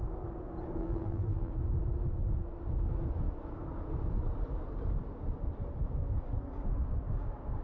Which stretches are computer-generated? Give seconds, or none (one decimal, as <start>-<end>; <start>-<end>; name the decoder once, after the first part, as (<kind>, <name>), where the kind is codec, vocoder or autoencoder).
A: 0.8-1.5 (vocoder, BigVGAN v2)